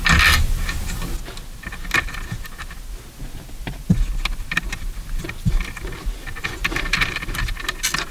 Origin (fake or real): real